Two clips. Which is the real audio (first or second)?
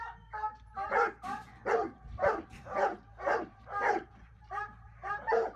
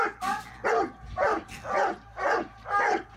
second